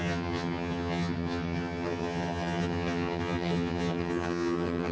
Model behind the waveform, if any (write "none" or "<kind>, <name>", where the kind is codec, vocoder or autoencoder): vocoder, HiFi-GAN